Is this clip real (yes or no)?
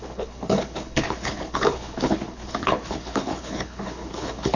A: no